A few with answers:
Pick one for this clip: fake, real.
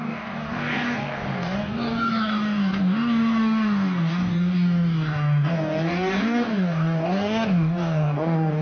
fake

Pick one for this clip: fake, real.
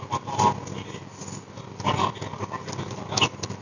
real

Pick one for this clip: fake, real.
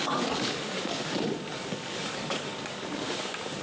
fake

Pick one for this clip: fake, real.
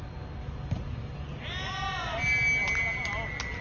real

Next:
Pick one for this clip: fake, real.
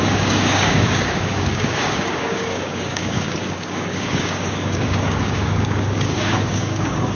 fake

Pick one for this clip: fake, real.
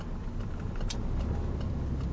real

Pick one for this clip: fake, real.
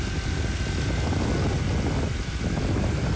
real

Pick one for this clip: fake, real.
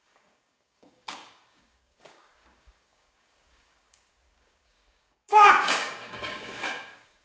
fake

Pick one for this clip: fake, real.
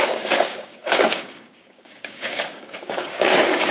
fake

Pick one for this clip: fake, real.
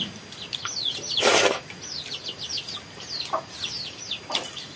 real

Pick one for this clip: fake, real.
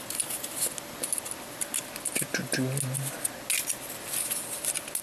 real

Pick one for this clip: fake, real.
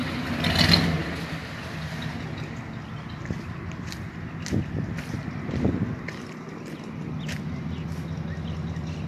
real